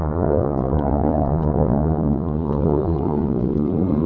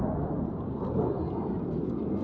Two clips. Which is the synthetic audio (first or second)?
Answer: first